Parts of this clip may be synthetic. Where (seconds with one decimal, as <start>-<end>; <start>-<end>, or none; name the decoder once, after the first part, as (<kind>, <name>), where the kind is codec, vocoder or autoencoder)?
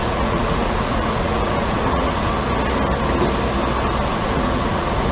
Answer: 0.0-2.3 (vocoder, Vocos); 4.1-5.1